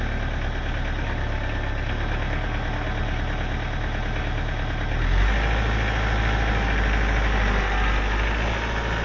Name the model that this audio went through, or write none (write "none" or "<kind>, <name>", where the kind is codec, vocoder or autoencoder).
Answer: none